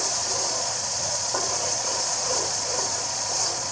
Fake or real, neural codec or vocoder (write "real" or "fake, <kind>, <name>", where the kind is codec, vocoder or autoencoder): fake, vocoder, Vocos